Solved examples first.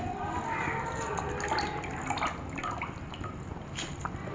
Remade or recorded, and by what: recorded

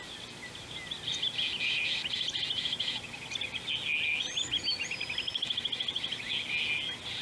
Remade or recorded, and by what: recorded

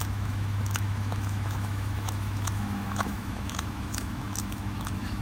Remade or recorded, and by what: remade, autoencoder, DAC-VAE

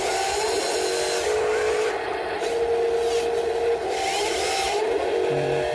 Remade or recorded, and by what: recorded